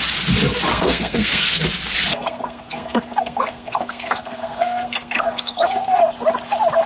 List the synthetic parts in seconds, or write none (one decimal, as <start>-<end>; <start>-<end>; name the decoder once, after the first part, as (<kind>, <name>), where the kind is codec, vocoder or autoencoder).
0.7-1.6 (codec, SNAC); 2.1-6.0